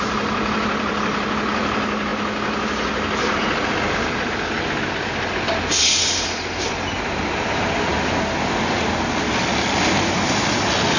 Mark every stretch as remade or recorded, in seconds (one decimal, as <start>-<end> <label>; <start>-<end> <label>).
0.0-11.0 recorded